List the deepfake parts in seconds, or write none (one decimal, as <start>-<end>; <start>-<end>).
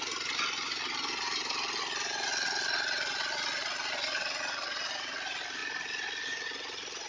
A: none